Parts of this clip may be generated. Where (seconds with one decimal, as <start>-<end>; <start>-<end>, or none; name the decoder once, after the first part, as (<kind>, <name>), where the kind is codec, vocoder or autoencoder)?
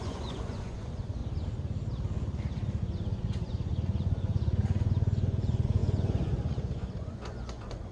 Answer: 0.0-1.2 (vocoder, Vocos); 2.8-7.9